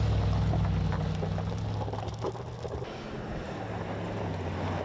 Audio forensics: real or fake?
real